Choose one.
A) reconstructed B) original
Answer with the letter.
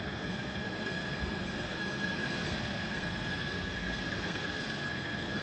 A